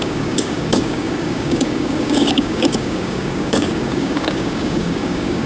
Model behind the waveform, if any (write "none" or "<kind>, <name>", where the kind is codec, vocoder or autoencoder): codec, DAC